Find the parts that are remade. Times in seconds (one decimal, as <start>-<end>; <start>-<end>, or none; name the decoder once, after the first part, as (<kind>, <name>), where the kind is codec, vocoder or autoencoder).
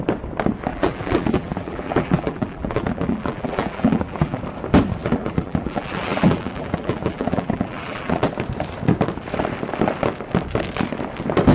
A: 0.7-4.4 (vocoder, BigVGAN v2); 5.0-8.3